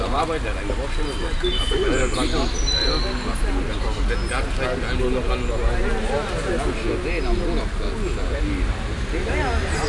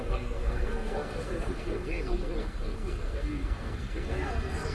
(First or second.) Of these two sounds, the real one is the first